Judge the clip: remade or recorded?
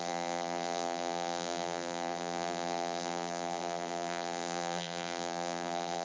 remade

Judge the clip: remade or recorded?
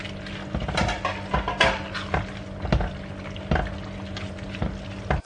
recorded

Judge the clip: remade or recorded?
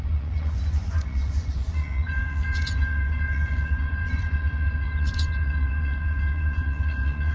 remade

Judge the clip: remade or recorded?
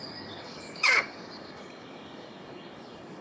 remade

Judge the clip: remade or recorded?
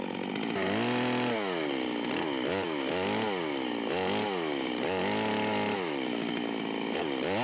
recorded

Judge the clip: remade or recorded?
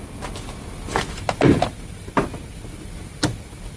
recorded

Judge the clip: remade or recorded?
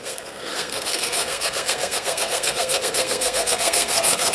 remade